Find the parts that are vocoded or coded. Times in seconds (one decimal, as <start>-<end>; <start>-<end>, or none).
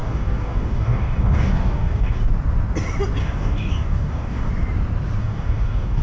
0.0-2.2; 3.2-4.5; 5.2-6.0